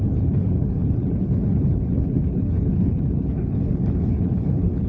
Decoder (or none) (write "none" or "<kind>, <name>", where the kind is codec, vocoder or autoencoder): codec, HILCodec